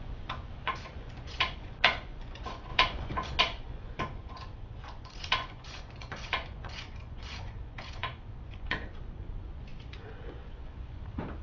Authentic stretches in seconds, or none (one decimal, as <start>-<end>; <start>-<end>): none